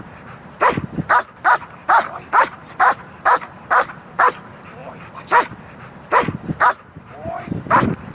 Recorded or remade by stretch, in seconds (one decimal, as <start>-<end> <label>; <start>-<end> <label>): 0.0-4.8 remade; 4.8-5.9 recorded; 5.9-8.1 remade